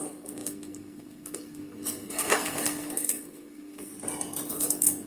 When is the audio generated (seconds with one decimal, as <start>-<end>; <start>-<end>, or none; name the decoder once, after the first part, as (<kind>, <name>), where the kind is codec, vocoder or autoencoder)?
0.0-3.9 (codec, SNAC); 4.5-5.1